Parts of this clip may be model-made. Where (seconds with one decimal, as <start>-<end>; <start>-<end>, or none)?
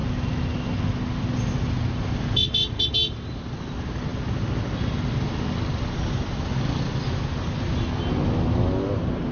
none